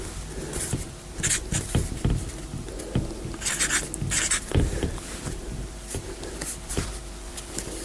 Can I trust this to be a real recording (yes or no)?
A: yes